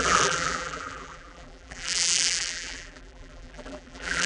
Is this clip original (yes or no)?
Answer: no